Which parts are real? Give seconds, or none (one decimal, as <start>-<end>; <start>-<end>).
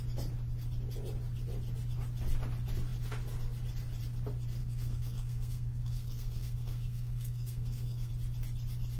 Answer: 0.0-4.6; 8.1-9.0